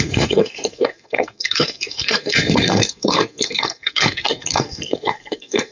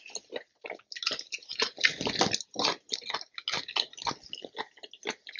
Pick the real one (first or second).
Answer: second